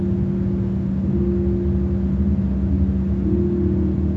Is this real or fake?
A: real